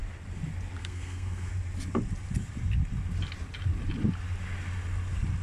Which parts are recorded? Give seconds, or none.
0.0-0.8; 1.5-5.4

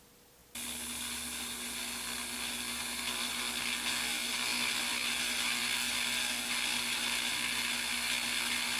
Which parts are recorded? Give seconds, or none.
0.0-8.8

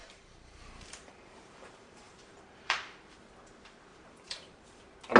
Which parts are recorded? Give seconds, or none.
3.1-3.9; 4.8-5.2

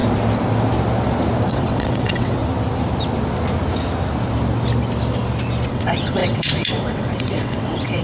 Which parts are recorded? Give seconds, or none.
0.0-1.5; 2.4-5.7